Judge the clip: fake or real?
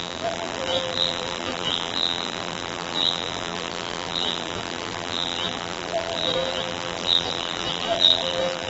fake